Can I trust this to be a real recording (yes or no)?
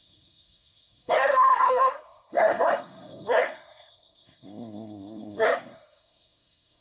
no